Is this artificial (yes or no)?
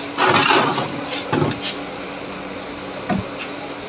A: no